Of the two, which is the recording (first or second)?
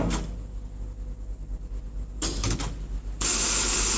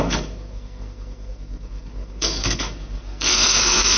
first